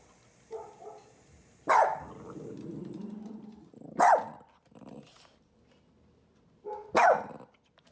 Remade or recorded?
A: recorded